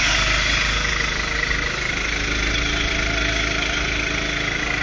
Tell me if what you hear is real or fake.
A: real